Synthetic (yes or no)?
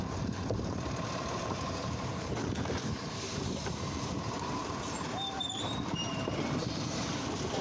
yes